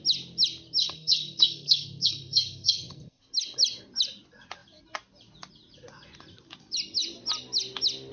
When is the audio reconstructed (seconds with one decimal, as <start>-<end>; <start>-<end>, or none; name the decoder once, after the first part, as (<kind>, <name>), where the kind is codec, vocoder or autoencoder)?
0.8-3.2 (codec, SNAC)